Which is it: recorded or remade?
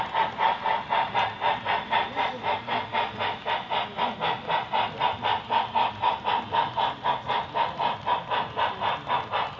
recorded